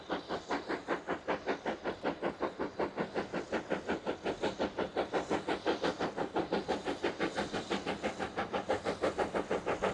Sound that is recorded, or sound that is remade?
recorded